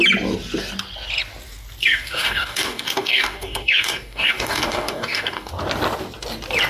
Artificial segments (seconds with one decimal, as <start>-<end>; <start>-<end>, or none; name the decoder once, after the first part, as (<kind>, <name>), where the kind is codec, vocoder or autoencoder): 1.8-5.5 (codec, DAC)

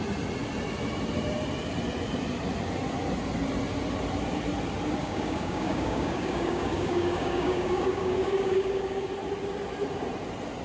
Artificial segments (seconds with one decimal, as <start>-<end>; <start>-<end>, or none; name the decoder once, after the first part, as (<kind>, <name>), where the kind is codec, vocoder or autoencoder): 5.0-9.1 (codec, DAC)

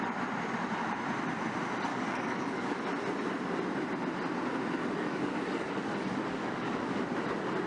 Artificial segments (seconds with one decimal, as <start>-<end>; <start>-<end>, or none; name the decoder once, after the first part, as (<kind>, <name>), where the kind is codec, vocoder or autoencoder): 1.9-2.8 (codec, DAC); 4.8-7.0

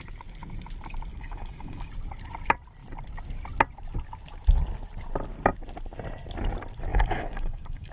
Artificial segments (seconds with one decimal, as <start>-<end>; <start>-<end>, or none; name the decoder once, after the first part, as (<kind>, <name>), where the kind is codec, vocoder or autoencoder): 1.1-1.9 (codec, DAC); 6.9-7.9

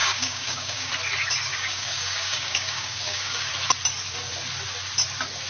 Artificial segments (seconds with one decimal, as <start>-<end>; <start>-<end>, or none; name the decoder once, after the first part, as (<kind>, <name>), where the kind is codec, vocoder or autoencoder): 0.0-0.9 (codec, DAC); 1.5-3.5

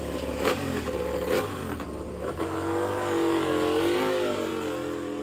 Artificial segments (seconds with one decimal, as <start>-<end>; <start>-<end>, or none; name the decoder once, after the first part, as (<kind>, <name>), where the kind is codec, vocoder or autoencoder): 0.0-1.6 (codec, DAC); 2.4-4.5